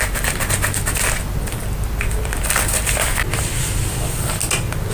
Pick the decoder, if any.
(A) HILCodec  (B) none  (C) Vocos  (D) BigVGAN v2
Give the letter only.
B